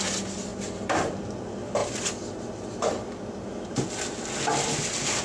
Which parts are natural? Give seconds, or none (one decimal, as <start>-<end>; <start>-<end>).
0.0-0.5; 1.3-5.2